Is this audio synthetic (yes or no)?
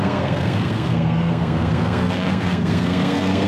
yes